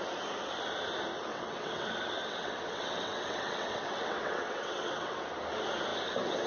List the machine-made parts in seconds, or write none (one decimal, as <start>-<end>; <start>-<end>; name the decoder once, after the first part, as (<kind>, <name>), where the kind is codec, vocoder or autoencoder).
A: 1.3-5.2 (vocoder, WaveNeXt)